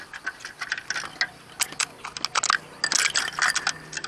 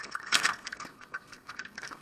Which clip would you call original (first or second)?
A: first